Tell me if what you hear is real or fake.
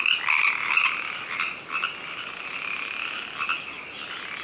real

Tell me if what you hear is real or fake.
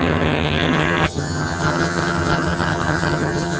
fake